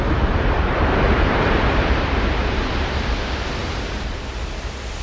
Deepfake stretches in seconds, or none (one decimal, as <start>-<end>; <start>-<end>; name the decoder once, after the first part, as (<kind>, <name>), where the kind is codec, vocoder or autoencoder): 0.0-3.0 (vocoder, BigVGAN v2); 3.6-4.2